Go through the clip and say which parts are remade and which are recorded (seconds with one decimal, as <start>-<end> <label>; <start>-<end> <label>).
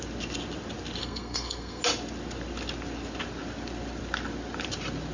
0.0-1.0 recorded; 1.0-1.8 remade; 1.8-5.1 recorded